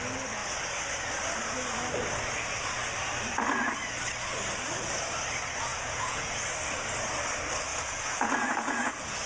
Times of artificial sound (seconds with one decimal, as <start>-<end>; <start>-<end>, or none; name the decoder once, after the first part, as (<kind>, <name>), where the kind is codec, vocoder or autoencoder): 5.7-6.3 (vocoder, Vocos); 7.7-8.9